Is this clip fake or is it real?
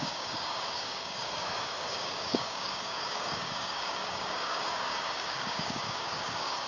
fake